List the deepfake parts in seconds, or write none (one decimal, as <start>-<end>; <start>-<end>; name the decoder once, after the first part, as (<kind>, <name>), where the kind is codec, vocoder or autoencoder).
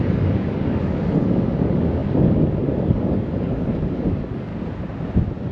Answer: 0.0-4.5 (codec, DAC)